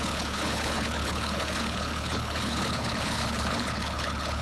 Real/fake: fake